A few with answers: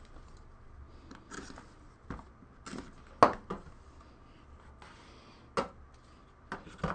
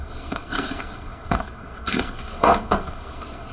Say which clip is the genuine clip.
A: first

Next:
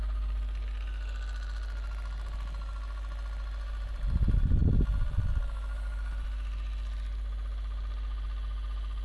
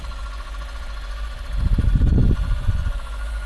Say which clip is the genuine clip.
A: first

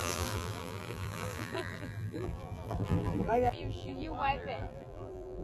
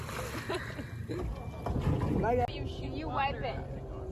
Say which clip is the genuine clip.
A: second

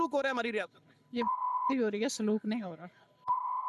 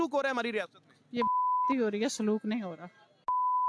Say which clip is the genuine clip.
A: second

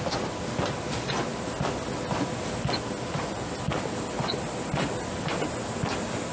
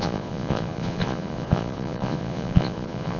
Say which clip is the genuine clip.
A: first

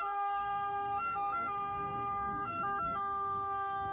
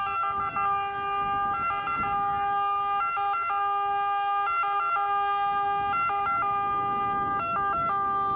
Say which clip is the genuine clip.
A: second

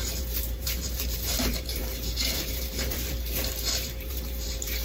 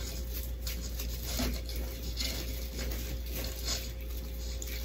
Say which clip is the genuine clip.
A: second